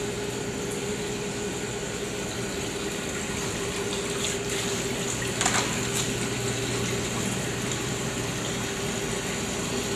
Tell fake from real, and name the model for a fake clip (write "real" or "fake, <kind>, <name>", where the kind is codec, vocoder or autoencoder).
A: real